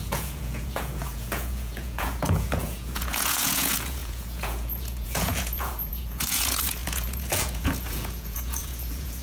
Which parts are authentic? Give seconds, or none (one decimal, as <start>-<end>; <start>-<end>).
none

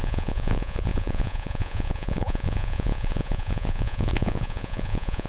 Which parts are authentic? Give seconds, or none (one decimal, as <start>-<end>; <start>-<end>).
none